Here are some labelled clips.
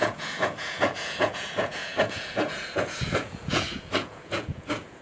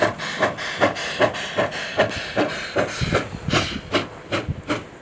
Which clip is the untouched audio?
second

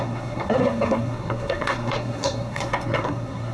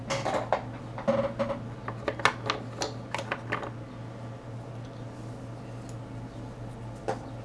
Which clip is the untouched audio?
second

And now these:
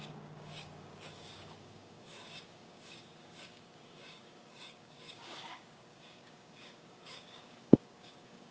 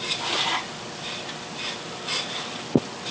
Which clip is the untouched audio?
second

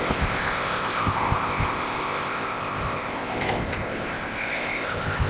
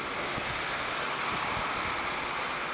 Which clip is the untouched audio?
second